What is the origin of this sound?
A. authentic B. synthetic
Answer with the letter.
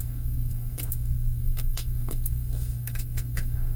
B